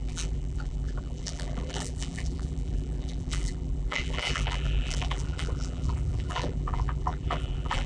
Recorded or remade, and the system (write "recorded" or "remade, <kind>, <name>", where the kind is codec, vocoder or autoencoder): remade, vocoder, BigVGAN v2